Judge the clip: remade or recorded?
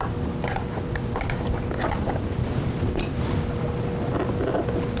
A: recorded